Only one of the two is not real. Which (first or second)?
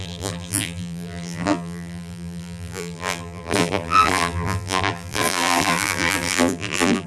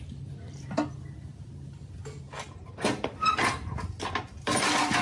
first